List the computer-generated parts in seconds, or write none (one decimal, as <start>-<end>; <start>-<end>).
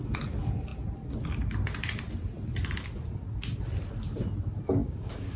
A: 4.8-5.4